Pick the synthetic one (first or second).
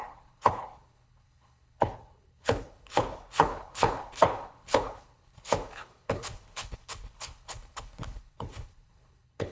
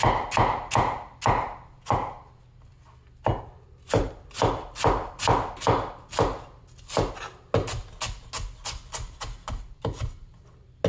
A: first